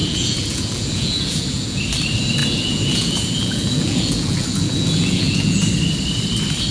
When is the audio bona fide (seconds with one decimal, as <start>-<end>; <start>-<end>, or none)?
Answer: 1.8-2.4; 5.6-6.7